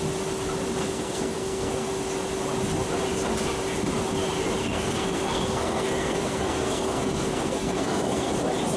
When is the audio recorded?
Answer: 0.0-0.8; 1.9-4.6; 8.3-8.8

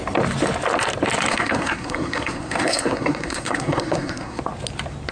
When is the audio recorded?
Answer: 0.0-1.3; 4.4-5.1

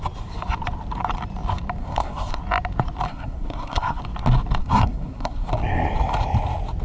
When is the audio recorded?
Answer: 0.0-1.8; 2.4-3.1; 4.0-4.6; 5.5-6.8

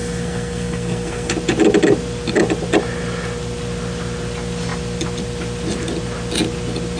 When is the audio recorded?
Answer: 1.3-7.0

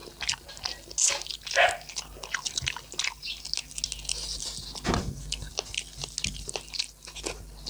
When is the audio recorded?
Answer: 0.0-5.0; 5.5-7.7

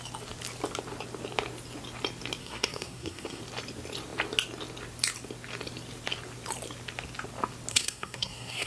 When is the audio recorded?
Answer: 0.0-2.4; 3.4-7.7

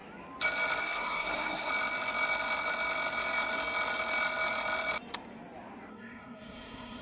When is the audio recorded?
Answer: 0.0-0.8; 1.7-5.9

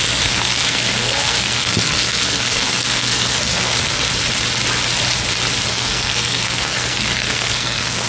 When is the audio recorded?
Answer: 4.1-5.7